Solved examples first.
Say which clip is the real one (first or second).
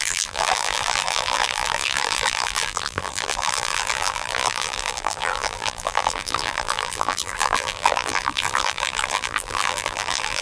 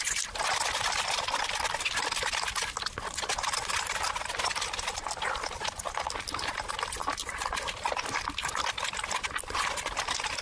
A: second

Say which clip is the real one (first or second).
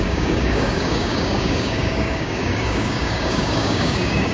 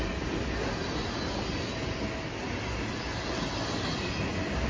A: second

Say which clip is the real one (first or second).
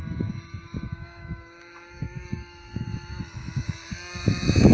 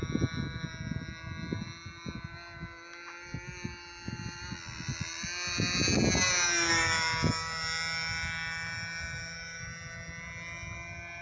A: second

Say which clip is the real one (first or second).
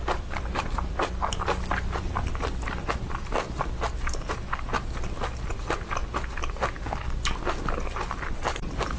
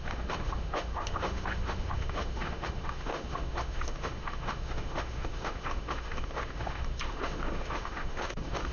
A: first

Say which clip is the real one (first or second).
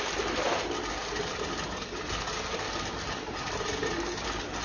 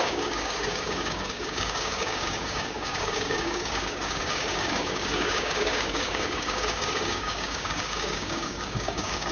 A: first